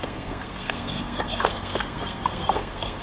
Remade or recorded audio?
remade